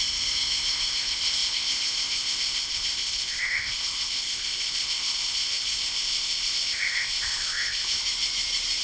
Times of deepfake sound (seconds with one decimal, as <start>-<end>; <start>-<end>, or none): 0.0-8.0